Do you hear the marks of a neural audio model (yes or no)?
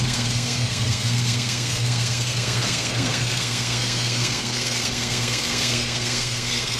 yes